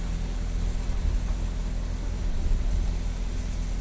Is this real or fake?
real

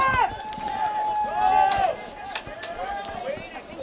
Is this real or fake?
real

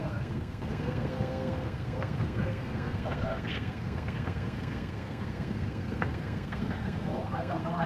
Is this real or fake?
fake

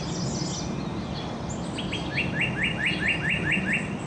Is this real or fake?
real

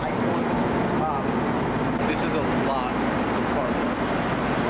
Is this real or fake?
real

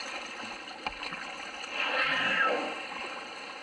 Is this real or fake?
real